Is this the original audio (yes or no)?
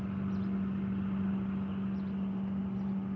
yes